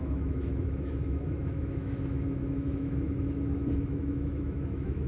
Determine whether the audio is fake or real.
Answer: fake